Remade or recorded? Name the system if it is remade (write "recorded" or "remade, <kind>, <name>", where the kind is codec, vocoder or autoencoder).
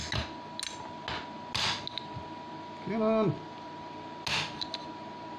recorded